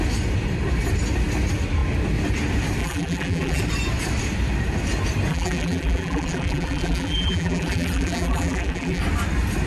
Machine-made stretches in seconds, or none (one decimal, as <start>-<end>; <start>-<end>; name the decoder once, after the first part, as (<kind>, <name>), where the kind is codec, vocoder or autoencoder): 2.8-3.6 (vocoder, BigVGAN v2); 5.3-9.0